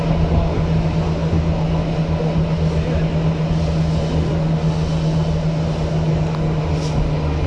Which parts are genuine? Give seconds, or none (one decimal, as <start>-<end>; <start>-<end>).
0.0-7.5